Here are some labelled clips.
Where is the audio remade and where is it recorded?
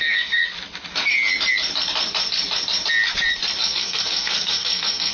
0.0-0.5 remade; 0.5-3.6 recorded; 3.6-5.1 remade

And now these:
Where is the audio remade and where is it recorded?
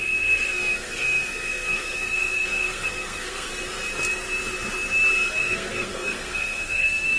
0.0-3.5 remade; 3.5-5.4 recorded; 5.4-7.2 remade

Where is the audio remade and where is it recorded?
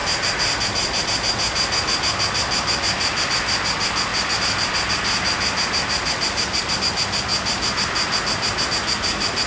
0.0-9.5 recorded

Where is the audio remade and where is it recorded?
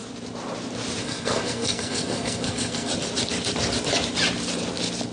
0.0-1.0 recorded; 1.0-2.9 remade; 2.9-5.1 recorded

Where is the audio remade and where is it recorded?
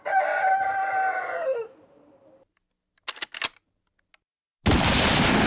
0.0-5.5 recorded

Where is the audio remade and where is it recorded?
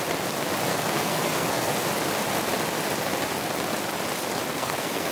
0.0-0.7 recorded; 0.7-1.7 remade; 1.7-4.5 recorded; 4.5-5.1 remade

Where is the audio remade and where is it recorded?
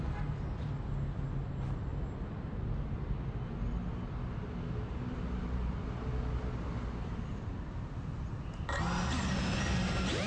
0.0-10.3 recorded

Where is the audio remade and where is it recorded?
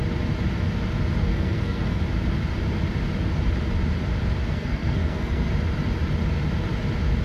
0.0-1.3 recorded; 1.3-2.0 remade; 2.0-4.4 recorded; 4.4-5.5 remade; 5.5-7.2 recorded